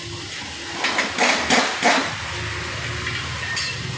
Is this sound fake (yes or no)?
no